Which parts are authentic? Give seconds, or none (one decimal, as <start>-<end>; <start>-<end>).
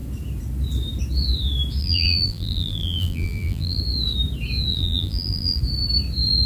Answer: 0.0-1.8; 3.8-4.7; 5.6-6.5